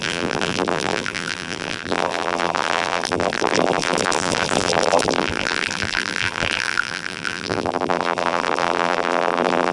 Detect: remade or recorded remade